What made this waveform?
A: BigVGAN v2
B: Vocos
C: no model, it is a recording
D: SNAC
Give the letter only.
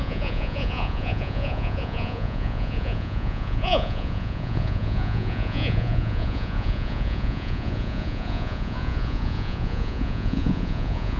B